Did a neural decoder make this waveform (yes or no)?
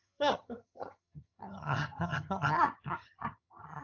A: yes